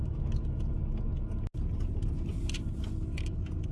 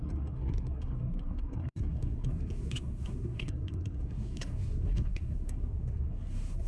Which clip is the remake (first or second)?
second